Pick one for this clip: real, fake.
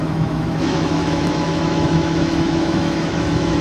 fake